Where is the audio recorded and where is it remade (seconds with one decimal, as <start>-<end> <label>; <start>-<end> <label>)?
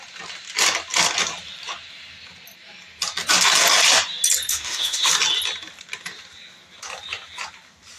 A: 0.0-4.5 recorded; 4.5-5.1 remade; 5.1-8.0 recorded